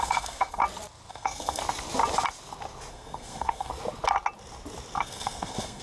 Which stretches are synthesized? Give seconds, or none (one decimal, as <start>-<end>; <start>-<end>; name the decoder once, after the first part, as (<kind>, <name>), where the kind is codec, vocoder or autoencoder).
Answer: 0.0-0.6 (codec, SNAC); 1.1-1.6; 2.9-3.7; 5.0-5.8